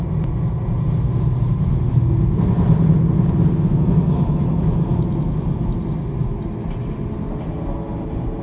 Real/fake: real